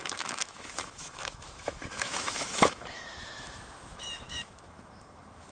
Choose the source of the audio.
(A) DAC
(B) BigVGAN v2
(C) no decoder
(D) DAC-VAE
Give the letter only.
D